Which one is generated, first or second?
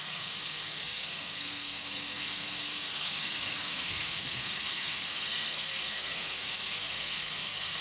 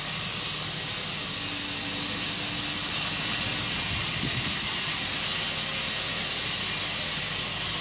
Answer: first